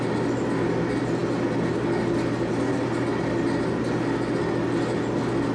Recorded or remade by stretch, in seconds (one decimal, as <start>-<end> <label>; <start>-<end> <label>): 0.0-5.5 recorded